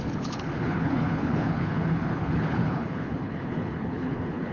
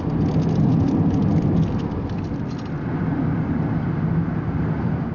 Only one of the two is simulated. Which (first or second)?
first